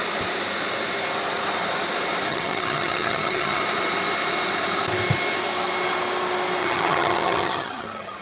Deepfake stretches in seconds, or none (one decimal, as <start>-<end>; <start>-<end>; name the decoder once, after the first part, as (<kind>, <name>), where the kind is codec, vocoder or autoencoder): 2.3-3.6 (vocoder, HiFi-GAN); 6.6-8.2